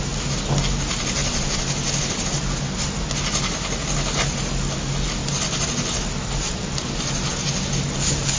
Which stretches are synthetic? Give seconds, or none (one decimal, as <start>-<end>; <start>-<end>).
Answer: none